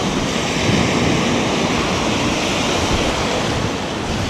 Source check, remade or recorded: recorded